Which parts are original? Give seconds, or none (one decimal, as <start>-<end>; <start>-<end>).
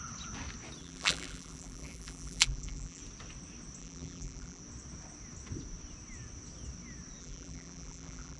0.0-0.8; 3.0-3.8; 4.6-7.2